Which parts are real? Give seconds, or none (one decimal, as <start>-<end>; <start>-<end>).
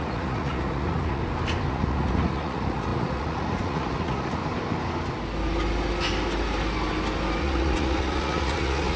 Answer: 1.2-1.7; 4.4-7.4